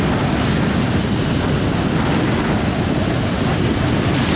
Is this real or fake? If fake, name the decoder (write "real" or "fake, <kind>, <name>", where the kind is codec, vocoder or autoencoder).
real